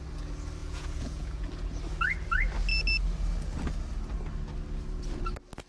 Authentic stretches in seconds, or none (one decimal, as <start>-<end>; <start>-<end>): 0.0-0.6; 1.5-5.7